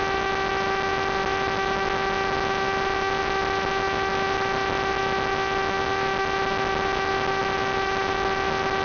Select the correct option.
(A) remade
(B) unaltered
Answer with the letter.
B